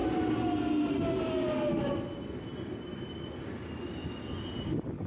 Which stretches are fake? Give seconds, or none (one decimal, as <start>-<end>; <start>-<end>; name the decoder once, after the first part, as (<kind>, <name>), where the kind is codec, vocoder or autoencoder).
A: none